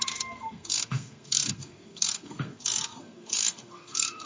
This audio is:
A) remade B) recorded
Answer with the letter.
A